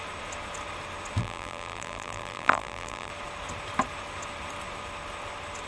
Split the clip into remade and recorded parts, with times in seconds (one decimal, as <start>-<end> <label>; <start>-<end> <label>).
0.0-1.2 recorded; 1.2-3.1 remade; 3.1-5.7 recorded